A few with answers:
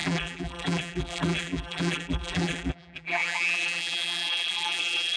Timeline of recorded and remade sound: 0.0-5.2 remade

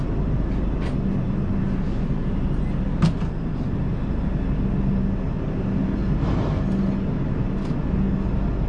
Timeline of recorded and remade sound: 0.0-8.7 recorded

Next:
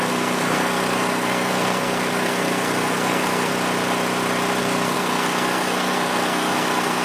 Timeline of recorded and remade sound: 0.0-3.5 remade; 3.5-4.6 recorded; 4.6-7.0 remade

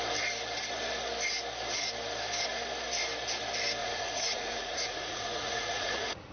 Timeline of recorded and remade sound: 0.0-3.8 recorded; 3.8-6.3 remade